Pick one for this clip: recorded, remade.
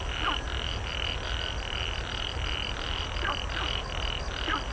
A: recorded